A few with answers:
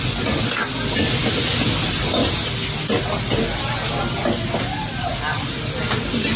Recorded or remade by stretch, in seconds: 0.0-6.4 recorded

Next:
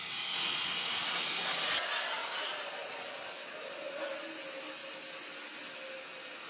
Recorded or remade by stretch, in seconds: 0.0-6.5 recorded

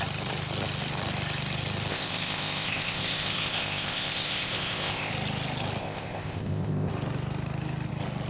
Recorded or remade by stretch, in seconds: 0.0-1.9 recorded; 1.9-5.1 remade; 5.1-5.8 recorded; 5.8-6.9 remade; 6.9-8.3 recorded

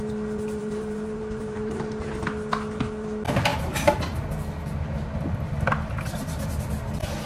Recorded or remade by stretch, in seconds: 0.0-0.6 recorded; 0.6-2.2 remade; 2.2-7.3 recorded

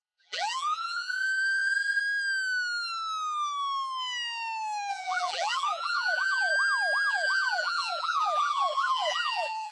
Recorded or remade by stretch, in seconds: 0.0-2.0 remade; 2.0-4.9 recorded; 4.9-6.5 remade; 6.5-7.1 recorded; 7.1-9.7 remade

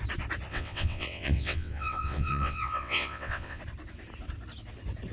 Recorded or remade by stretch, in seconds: 0.0-0.5 recorded; 0.5-3.6 remade; 3.6-5.1 recorded

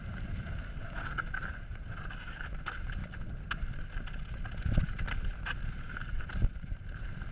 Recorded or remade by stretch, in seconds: 0.0-7.3 recorded

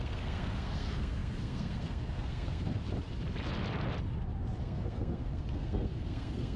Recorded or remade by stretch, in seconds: 0.0-2.8 remade; 2.8-4.6 recorded; 4.6-6.6 remade